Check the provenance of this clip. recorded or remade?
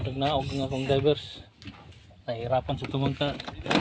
recorded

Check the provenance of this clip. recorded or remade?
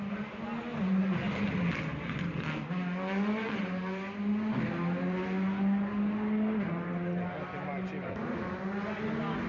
recorded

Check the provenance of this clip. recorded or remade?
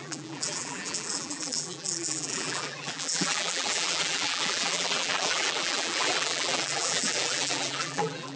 remade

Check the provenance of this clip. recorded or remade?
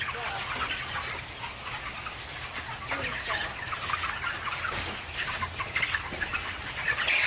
recorded